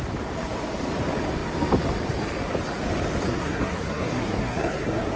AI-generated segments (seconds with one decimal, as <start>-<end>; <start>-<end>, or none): 3.3-5.2